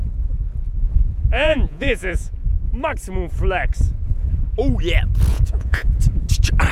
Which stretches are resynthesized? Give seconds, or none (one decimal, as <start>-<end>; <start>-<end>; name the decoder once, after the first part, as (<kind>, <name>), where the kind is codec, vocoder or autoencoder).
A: 1.3-2.3 (vocoder, Vocos); 5.3-5.9